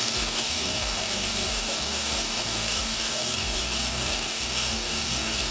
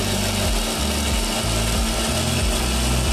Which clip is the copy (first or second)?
first